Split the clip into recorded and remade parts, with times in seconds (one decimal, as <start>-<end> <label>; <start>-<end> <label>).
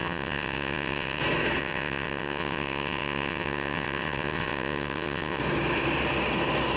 0.0-1.2 remade; 1.2-1.6 recorded; 1.6-5.4 remade; 5.4-6.8 recorded